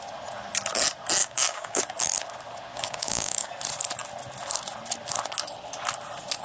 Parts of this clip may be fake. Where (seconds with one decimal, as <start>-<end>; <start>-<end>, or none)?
1.2-1.8; 2.7-3.5